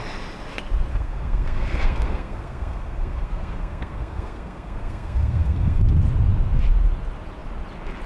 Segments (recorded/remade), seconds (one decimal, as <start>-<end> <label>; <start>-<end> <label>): 0.0-0.9 recorded; 0.9-5.8 remade; 5.8-8.1 recorded